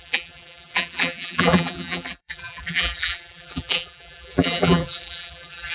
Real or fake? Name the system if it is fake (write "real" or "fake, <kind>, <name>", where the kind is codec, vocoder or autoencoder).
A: fake, vocoder, BigVGAN v2